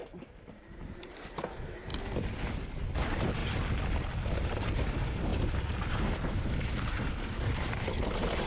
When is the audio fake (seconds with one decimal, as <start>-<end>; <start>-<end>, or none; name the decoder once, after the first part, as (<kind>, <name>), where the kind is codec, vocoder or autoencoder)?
0.0-1.9 (vocoder, BigVGAN v2); 2.8-3.4; 4.3-8.5